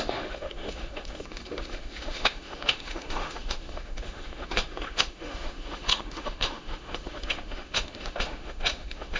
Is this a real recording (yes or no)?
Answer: no